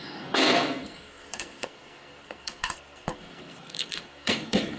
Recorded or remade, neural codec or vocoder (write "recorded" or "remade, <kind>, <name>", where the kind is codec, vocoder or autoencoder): remade, codec, SNAC